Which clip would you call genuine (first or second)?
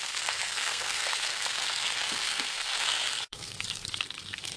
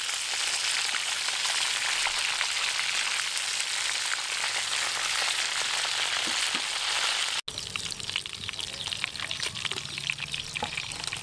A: second